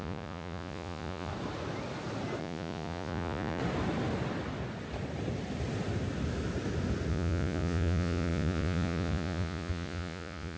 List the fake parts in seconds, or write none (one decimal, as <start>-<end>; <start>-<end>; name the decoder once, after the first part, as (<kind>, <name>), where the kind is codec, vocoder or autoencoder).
0.0-1.3 (vocoder, Vocos); 2.4-3.6; 7.1-10.6